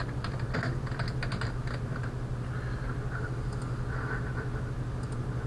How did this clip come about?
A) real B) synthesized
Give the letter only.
A